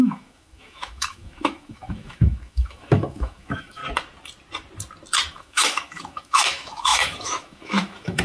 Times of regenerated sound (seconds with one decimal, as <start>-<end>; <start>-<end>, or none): 0.0-3.8; 5.3-8.2